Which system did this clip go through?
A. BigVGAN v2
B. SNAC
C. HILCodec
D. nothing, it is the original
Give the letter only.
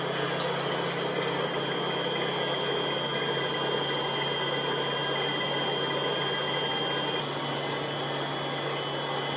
D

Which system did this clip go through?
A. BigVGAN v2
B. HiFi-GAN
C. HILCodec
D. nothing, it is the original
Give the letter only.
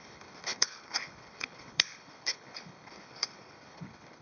C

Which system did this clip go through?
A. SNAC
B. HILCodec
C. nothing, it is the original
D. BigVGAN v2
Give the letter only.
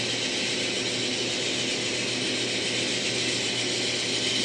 C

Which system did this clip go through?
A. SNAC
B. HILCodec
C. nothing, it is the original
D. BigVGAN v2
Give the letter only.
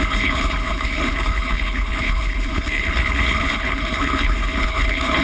B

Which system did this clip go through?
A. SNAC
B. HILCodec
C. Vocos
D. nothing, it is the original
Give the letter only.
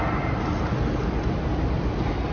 D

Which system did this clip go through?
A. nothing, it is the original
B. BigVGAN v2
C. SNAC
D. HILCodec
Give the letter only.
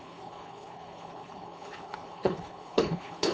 D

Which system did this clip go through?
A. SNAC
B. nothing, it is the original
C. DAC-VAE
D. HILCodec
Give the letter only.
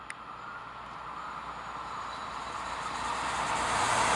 B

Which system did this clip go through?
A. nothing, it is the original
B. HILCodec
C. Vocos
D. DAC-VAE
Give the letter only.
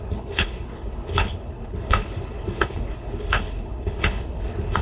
B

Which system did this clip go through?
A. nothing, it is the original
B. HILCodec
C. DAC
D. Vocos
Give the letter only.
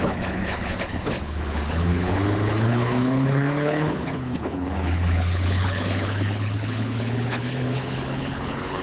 B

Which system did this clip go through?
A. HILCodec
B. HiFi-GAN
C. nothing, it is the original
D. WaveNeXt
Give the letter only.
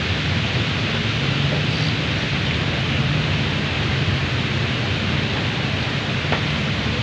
C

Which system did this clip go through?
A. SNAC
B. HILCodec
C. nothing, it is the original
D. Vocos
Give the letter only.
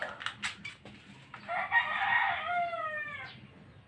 C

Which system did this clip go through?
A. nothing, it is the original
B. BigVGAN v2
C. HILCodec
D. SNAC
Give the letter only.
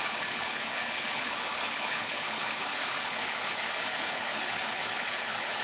C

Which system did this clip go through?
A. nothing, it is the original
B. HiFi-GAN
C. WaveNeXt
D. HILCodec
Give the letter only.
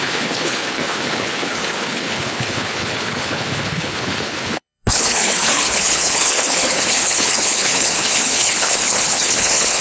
D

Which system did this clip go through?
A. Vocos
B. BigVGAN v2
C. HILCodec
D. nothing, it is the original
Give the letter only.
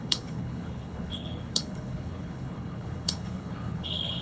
C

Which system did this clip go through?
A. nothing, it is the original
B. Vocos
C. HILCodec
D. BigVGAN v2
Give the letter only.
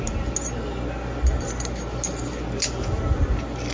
A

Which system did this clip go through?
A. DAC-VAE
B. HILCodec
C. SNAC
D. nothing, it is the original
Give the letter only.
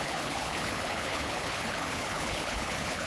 B